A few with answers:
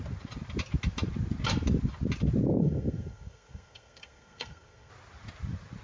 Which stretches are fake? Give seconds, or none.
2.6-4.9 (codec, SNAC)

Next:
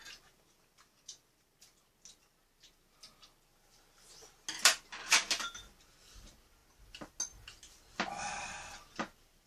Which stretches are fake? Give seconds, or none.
none

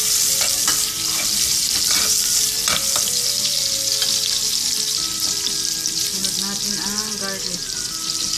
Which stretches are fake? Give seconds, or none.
none

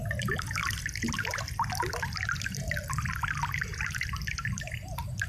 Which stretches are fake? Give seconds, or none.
0.0-0.6 (vocoder, BigVGAN v2); 3.8-5.3

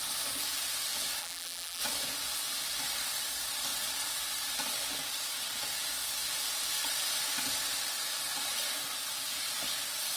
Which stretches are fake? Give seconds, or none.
1.2-1.8 (vocoder, BigVGAN v2)

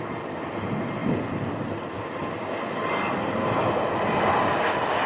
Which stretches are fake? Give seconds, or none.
none